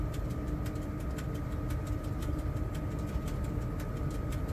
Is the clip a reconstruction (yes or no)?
no